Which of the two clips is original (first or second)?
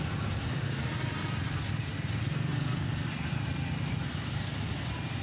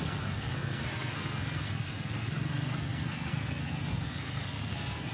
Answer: first